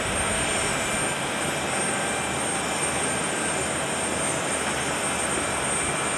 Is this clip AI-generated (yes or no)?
no